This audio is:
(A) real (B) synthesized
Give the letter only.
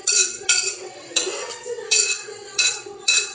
B